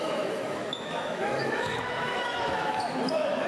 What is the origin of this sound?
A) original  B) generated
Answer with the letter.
B